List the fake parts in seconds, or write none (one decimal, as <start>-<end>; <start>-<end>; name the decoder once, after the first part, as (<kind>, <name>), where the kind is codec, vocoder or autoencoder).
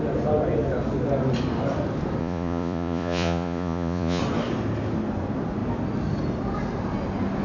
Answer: 2.2-4.2 (vocoder, Vocos)